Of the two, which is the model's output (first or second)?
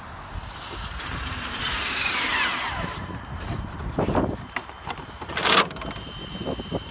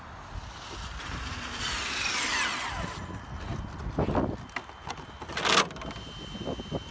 first